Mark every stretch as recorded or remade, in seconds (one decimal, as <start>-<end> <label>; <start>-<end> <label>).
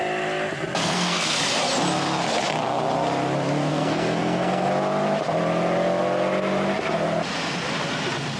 0.0-0.8 recorded; 0.8-1.4 remade; 1.4-3.7 recorded; 3.7-4.7 remade; 4.7-8.4 recorded